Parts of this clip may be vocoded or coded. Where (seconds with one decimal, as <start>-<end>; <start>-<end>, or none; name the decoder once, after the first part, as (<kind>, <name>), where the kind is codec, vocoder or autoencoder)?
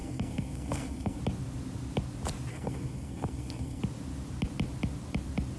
0.0-1.2 (codec, SNAC); 2.5-3.8